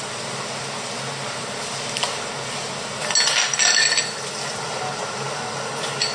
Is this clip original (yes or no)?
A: yes